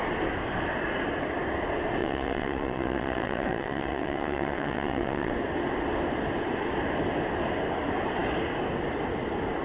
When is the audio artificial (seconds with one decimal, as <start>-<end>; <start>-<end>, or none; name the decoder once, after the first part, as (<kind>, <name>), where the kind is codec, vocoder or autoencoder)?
2.0-5.3 (vocoder, WaveNeXt)